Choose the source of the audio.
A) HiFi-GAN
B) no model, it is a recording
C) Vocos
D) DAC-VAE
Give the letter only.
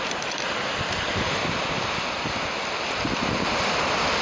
B